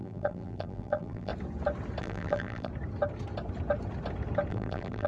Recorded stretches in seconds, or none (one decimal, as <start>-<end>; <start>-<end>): 1.3-2.0; 2.7-4.5